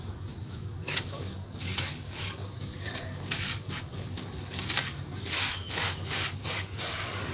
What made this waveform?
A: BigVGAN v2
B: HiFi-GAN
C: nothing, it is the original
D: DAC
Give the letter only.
D